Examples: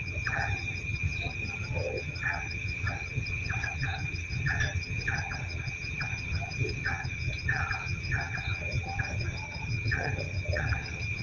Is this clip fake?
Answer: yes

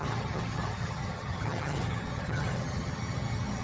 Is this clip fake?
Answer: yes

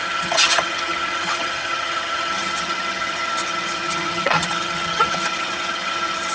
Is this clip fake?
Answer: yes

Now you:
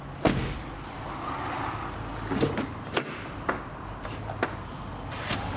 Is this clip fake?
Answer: no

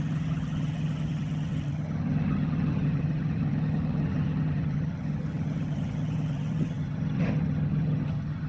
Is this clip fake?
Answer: yes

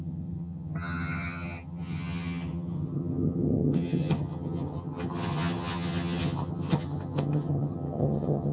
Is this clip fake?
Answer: yes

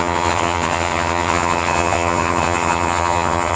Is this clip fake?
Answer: yes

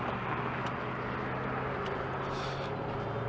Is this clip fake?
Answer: no